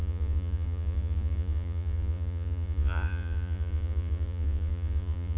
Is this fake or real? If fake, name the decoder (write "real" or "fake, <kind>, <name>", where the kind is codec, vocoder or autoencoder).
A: fake, vocoder, Vocos